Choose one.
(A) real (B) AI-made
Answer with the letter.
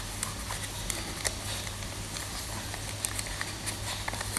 A